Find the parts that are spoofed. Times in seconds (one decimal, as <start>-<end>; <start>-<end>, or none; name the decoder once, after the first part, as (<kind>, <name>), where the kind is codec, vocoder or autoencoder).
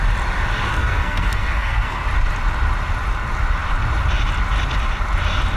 0.7-2.0 (codec, SNAC)